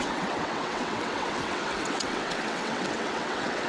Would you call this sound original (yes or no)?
no